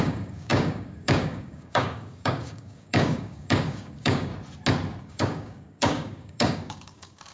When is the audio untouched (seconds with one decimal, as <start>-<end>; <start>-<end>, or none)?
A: 4.3-5.0